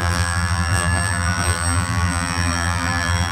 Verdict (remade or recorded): remade